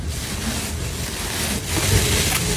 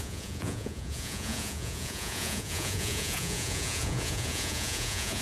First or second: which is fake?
second